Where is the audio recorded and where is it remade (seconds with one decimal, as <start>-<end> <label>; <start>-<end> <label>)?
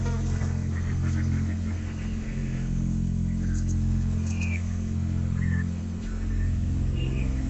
0.0-7.5 remade